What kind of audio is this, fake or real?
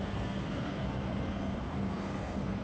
fake